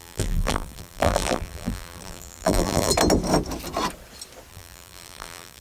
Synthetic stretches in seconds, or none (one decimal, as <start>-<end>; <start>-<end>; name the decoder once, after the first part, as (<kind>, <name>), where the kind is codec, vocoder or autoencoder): 0.0-2.9 (vocoder, BigVGAN v2); 4.5-5.6